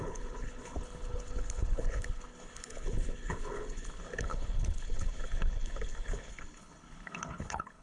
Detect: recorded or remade remade